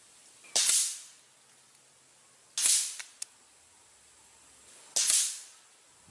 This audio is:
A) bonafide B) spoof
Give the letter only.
A